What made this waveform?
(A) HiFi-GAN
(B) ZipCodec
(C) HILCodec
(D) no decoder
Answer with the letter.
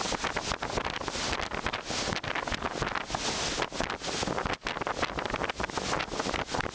D